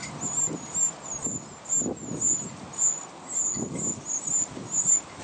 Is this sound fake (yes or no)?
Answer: no